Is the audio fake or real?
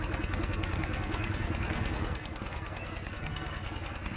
fake